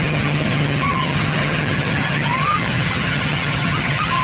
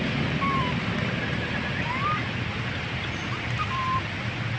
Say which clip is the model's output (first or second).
first